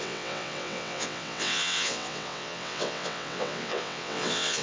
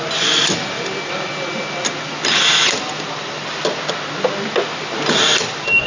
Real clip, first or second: second